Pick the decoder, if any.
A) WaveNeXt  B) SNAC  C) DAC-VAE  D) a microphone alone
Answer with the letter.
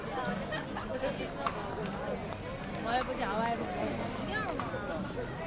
D